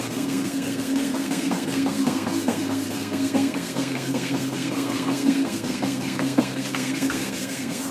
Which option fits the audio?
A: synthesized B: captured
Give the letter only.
A